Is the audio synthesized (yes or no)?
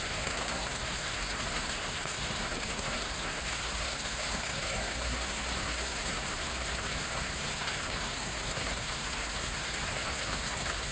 yes